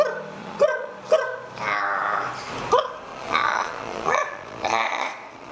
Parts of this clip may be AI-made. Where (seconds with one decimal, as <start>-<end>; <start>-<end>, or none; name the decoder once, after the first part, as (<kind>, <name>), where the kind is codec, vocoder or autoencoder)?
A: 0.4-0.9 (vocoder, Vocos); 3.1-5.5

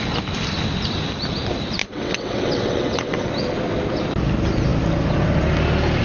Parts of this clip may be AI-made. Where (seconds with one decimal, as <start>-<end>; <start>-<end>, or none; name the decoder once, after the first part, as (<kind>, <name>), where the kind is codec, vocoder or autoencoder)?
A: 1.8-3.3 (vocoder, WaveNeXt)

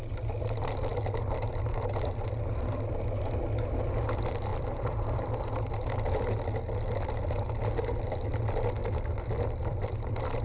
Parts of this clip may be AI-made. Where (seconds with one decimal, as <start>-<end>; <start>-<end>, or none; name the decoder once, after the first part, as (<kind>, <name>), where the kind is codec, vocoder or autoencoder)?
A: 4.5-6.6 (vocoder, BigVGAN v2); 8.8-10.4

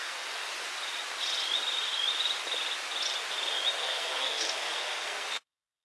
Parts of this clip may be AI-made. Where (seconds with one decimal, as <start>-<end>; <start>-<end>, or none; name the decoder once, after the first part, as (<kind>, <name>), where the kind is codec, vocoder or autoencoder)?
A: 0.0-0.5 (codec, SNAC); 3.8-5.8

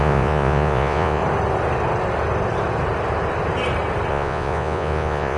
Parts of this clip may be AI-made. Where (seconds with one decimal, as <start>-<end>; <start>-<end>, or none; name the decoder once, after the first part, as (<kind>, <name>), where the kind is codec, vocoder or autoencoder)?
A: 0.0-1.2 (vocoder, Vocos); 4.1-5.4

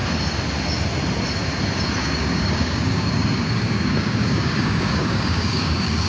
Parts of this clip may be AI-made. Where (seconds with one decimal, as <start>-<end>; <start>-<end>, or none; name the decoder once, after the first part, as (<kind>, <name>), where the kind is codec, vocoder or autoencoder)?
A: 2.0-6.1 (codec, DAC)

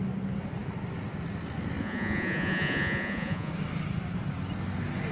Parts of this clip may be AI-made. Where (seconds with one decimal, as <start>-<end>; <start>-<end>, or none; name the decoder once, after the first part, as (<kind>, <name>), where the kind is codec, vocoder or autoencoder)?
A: 1.8-3.5 (vocoder, Vocos)

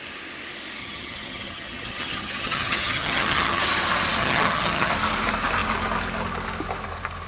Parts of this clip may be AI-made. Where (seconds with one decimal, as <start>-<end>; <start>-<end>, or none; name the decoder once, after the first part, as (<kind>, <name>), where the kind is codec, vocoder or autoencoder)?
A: 0.8-3.6 (vocoder, HiFi-GAN); 4.2-4.9